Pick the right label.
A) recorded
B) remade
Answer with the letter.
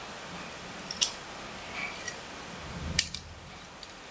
A